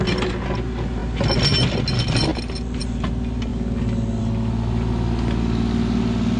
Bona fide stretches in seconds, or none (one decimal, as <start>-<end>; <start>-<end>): 0.0-6.4